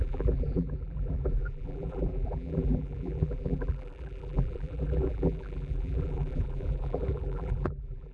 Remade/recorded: remade